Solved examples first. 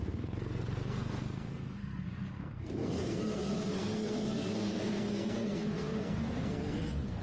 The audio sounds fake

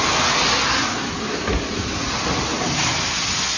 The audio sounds real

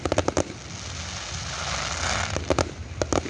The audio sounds real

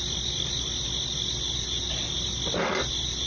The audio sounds real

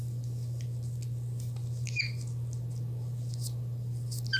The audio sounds real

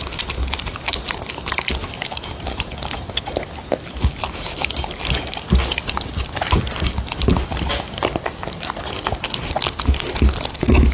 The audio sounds real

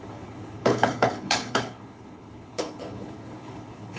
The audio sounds fake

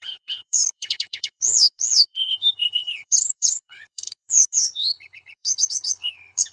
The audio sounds fake